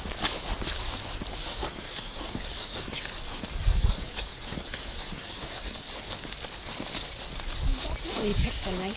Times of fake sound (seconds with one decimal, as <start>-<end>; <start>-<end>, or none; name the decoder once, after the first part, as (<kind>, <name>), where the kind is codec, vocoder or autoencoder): 1.3-6.0 (codec, DAC)